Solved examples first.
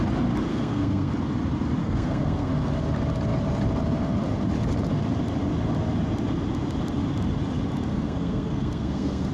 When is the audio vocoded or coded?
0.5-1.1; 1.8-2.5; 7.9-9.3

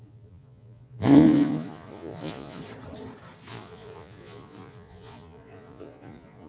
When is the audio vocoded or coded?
0.0-2.6; 3.5-6.5

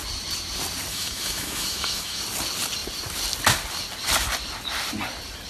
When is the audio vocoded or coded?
0.9-2.2

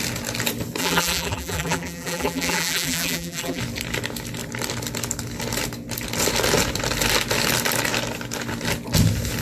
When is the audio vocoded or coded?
0.8-3.6

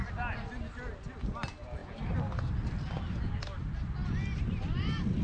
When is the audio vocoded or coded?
none